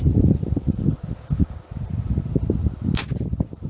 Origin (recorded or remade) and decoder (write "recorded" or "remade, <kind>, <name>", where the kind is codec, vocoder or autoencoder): recorded